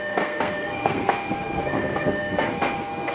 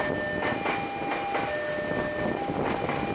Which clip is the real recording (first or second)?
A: second